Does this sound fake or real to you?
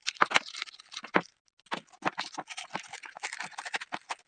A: real